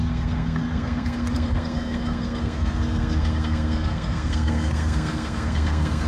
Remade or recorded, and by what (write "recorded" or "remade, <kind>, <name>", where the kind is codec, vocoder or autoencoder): remade, codec, SNAC